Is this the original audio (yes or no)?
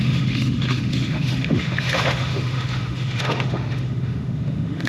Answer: no